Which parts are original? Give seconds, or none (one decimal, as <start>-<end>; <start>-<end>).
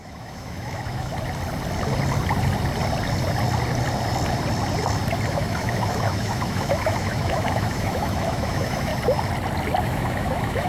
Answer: 1.1-5.3; 8.9-9.8